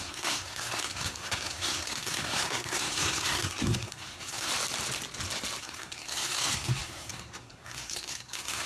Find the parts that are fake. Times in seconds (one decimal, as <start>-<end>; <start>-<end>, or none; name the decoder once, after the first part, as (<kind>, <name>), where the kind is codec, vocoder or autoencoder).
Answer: 0.0-4.5 (codec, SNAC); 5.6-8.7